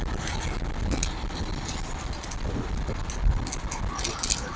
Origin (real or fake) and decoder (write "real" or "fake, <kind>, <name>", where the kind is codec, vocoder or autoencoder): real